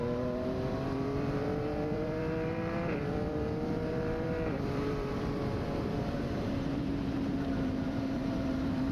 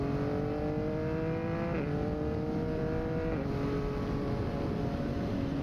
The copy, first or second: first